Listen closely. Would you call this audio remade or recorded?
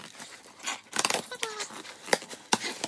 recorded